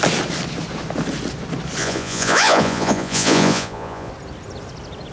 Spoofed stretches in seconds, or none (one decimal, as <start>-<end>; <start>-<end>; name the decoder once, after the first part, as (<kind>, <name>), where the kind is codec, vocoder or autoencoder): 1.8-4.1 (vocoder, Vocos)